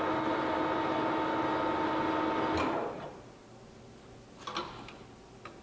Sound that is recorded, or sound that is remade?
recorded